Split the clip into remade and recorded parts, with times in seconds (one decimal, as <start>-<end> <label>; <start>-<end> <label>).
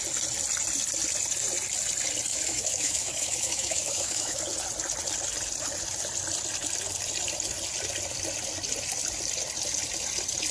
0.0-2.3 recorded; 2.3-4.4 remade; 4.4-10.5 recorded